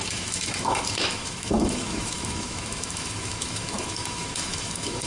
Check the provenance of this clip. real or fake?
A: fake